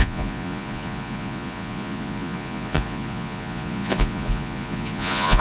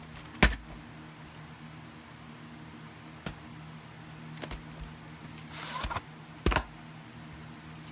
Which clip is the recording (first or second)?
second